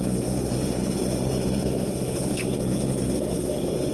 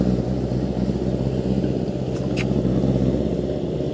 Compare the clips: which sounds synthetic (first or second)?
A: first